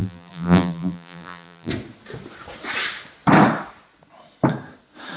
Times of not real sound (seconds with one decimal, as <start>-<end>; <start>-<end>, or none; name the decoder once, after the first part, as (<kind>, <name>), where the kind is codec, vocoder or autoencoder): 0.0-1.7 (vocoder, BigVGAN v2)